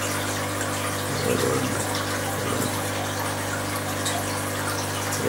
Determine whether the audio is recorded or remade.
recorded